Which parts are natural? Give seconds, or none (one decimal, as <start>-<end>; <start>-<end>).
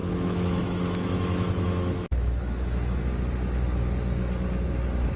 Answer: 3.1-5.2